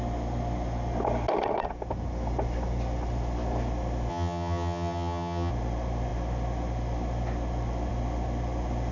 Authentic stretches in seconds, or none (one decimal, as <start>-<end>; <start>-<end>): 0.0-4.1; 5.5-8.9